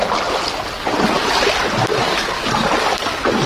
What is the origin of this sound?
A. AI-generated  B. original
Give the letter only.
B